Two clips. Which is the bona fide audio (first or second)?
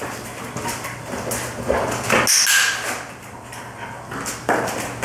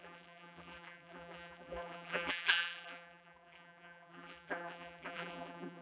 first